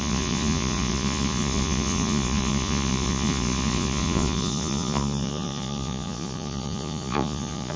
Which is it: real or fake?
fake